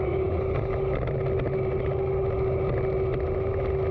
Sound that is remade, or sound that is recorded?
recorded